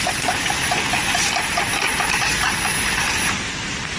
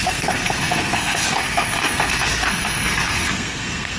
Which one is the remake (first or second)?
second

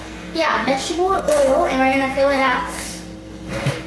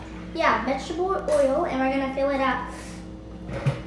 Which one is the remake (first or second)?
first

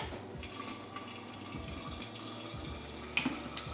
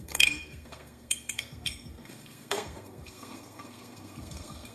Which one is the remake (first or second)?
second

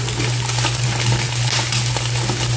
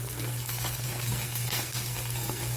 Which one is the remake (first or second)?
second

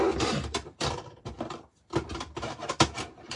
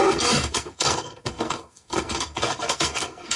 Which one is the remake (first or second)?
second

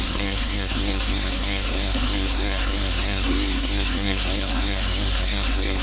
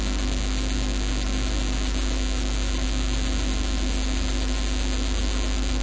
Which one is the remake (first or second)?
first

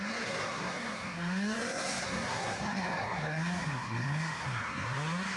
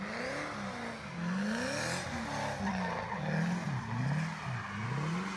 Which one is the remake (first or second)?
first